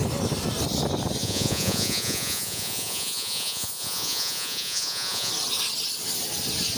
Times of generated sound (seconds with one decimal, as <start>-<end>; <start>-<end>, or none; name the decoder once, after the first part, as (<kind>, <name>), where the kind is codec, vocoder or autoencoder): 1.2-5.3 (vocoder, Vocos)